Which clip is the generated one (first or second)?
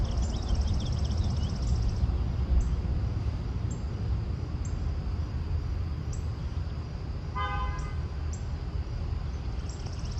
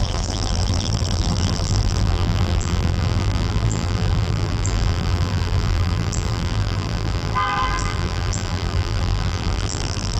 second